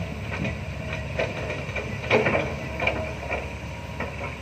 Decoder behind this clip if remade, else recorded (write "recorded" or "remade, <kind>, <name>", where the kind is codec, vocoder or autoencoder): recorded